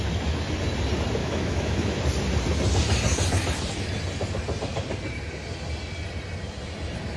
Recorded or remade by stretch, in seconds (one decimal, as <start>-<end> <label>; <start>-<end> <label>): 0.0-1.2 recorded; 1.2-2.0 remade; 2.0-7.2 recorded